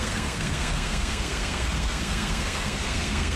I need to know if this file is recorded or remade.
remade